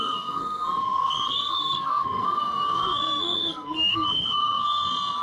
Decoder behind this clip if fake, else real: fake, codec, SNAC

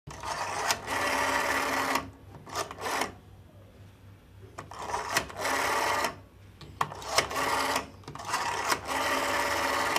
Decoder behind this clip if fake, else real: real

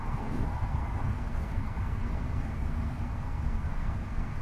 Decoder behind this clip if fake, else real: fake, codec, SNAC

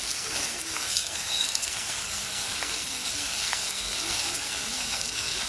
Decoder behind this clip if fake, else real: fake, codec, SNAC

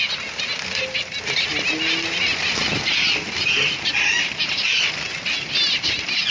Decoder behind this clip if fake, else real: real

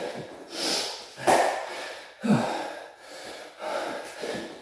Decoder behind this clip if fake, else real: real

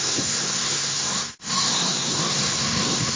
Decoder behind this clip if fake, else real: fake, codec, SNAC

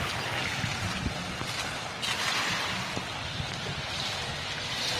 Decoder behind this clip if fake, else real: real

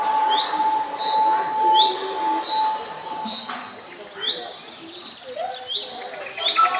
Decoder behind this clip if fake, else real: real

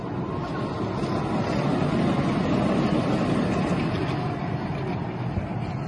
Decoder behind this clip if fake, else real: real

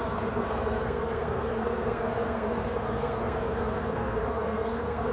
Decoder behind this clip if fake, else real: fake, codec, SNAC